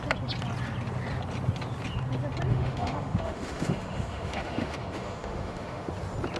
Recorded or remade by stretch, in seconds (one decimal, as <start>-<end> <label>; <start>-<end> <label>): 0.0-2.5 recorded; 2.5-5.9 remade; 5.9-6.4 recorded